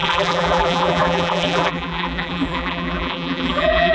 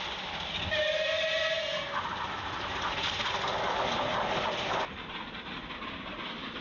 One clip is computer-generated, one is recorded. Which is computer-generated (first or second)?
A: first